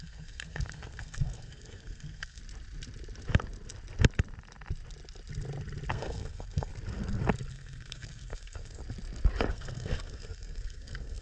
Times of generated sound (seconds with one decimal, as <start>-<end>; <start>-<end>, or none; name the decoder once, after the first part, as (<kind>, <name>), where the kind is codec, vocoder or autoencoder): 0.0-2.4 (codec, SNAC); 5.9-6.7; 7.5-8.8; 9.5-11.2

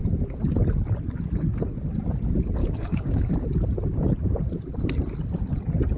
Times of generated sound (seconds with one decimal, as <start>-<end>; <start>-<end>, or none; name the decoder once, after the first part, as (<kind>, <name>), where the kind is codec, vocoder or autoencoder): 2.6-3.3 (codec, DAC)